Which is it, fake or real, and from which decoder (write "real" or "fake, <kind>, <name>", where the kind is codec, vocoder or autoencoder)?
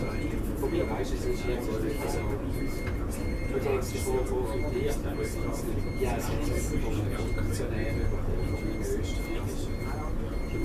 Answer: real